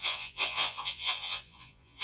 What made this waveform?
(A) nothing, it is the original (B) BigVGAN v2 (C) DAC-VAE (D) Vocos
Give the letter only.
D